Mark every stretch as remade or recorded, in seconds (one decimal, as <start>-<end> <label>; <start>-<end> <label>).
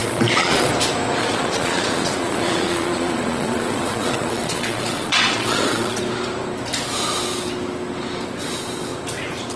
0.0-0.7 remade; 0.7-1.2 recorded; 1.2-6.0 remade; 6.0-9.6 recorded